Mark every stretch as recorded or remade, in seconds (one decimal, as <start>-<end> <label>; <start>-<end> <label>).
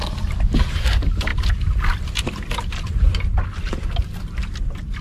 0.0-5.0 recorded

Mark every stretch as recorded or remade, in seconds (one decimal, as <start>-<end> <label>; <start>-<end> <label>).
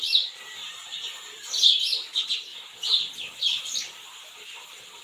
0.0-5.0 remade